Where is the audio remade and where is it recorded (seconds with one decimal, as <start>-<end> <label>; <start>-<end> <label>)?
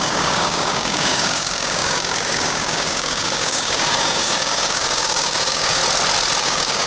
0.0-5.8 remade; 5.8-6.4 recorded; 6.4-6.9 remade